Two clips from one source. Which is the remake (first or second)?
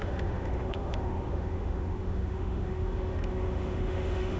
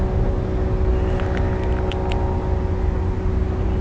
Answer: first